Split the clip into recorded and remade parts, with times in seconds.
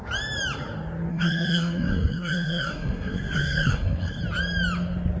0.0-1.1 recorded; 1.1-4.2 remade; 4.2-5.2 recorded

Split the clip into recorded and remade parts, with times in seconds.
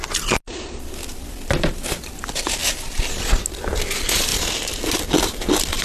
0.0-5.8 recorded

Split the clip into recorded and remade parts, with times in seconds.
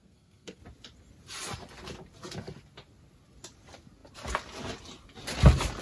0.0-0.6 remade; 0.6-5.8 recorded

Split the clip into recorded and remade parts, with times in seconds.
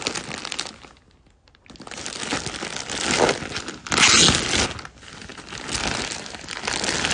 0.0-7.1 recorded